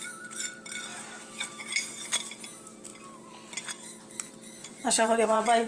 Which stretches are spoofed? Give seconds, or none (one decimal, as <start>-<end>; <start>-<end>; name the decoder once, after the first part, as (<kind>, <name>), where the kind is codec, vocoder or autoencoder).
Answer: 4.6-5.7 (vocoder, Vocos)